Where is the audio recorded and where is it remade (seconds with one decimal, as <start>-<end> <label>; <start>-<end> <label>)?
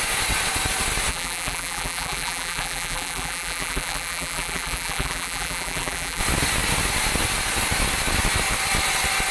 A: 0.0-1.1 recorded; 1.1-6.2 remade; 6.2-9.3 recorded